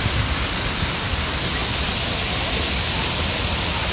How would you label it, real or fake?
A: real